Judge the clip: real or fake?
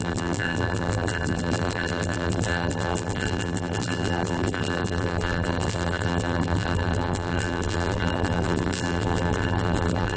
fake